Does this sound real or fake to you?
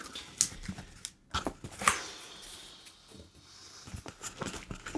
real